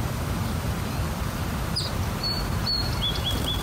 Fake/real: fake